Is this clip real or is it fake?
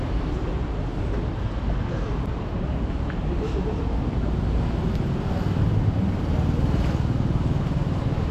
real